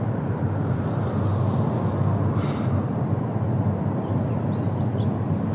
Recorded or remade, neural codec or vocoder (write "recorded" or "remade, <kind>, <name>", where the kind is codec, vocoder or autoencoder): recorded